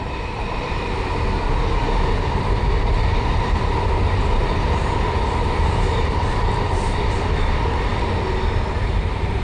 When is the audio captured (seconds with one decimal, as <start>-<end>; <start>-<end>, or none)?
1.1-2.4; 7.9-8.7